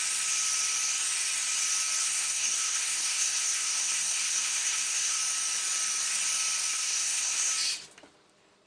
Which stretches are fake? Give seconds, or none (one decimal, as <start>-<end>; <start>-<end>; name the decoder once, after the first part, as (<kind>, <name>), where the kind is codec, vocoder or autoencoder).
2.0-5.2 (codec, SNAC); 6.6-7.5